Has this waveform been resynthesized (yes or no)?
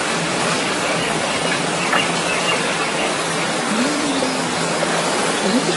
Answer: yes